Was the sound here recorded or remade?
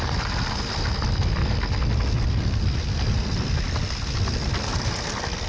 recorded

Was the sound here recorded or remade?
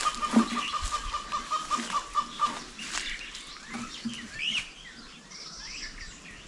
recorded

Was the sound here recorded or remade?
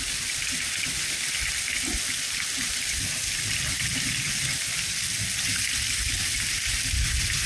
recorded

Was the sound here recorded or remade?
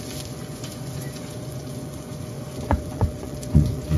remade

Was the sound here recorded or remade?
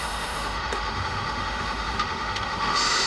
remade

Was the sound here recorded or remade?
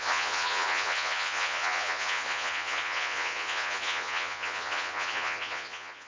remade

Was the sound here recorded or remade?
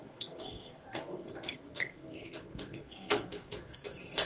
remade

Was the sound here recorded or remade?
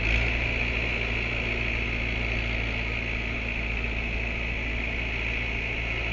recorded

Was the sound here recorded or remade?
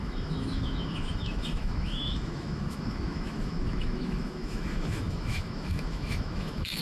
remade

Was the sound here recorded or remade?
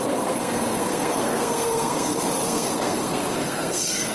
remade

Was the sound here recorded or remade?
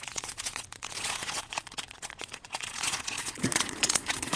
remade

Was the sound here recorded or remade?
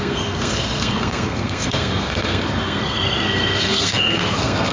remade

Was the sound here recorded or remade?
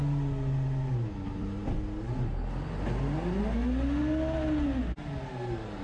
recorded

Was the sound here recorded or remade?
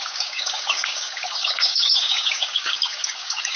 remade